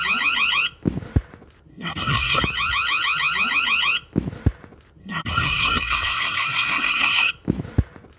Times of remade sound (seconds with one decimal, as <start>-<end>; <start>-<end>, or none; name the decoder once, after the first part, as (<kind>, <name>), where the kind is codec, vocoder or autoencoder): 1.7-2.4 (codec, SNAC); 5.0-7.3